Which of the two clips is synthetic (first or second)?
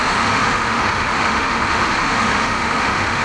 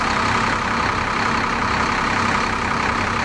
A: first